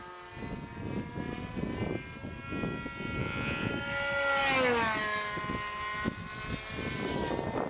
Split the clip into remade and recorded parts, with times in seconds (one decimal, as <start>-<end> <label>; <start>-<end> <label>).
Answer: 0.0-3.2 recorded; 3.2-3.7 remade; 3.7-7.7 recorded